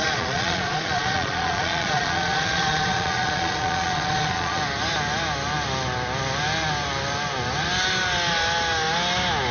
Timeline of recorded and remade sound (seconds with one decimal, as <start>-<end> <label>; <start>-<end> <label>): 0.0-4.6 remade; 4.6-9.5 recorded